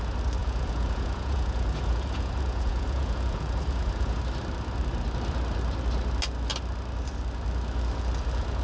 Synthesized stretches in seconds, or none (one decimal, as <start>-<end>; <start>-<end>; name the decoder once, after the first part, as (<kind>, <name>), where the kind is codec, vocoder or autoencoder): 0.4-4.2 (vocoder, Vocos)